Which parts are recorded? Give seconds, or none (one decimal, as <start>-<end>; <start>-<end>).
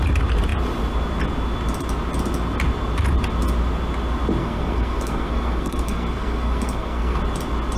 0.0-4.4; 7.2-7.8